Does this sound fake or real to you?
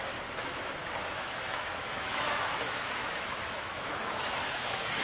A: fake